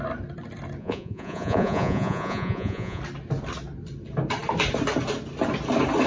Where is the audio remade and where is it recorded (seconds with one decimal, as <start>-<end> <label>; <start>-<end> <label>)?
0.0-0.8 recorded; 0.8-3.0 remade; 3.0-6.1 recorded